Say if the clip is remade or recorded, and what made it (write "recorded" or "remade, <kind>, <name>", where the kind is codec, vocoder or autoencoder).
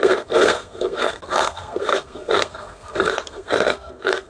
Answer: remade, codec, SNAC